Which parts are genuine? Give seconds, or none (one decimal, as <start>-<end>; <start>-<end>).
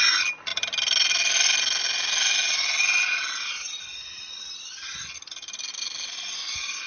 0.0-6.9